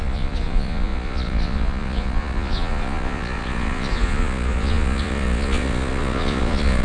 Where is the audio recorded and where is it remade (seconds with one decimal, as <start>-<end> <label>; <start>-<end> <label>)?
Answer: 0.0-6.8 remade